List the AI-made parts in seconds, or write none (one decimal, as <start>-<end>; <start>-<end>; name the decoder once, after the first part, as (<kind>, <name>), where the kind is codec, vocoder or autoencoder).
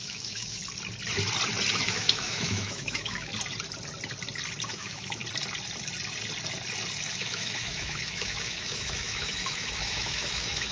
0.0-0.6 (autoencoder, DAC-VAE); 1.7-3.3; 4.7-5.2; 7.1-10.7